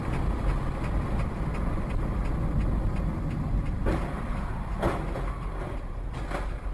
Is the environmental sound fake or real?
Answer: real